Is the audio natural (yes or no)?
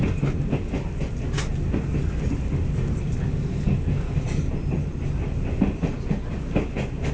yes